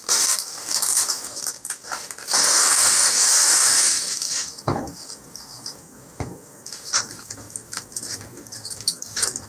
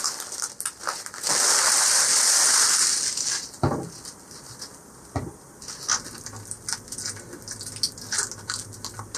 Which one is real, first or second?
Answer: second